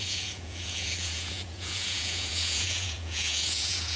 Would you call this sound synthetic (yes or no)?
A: yes